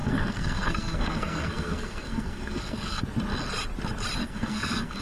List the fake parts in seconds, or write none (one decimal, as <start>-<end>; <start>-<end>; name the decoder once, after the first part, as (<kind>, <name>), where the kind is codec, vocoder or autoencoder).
0.0-3.0 (codec, SNAC); 4.2-5.0